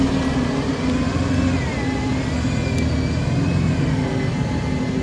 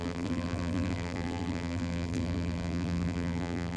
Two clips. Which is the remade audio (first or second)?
second